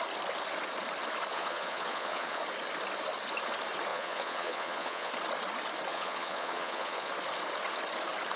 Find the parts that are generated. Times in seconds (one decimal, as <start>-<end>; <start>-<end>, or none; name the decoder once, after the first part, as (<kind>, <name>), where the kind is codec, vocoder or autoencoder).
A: 1.3-2.4 (vocoder, Vocos); 3.9-5.1; 5.9-7.1